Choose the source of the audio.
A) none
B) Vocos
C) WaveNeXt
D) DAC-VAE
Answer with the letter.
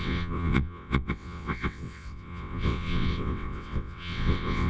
C